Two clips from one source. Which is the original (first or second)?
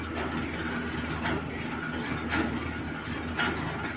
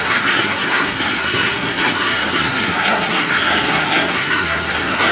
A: first